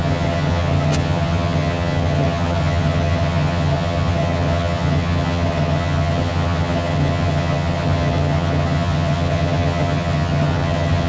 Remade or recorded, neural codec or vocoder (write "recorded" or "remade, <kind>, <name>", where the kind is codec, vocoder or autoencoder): remade, vocoder, HiFi-GAN